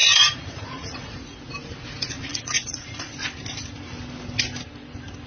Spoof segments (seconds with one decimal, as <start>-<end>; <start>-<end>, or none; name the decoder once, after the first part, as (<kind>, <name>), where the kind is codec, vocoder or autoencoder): 0.0-1.4 (vocoder, Vocos); 2.3-3.1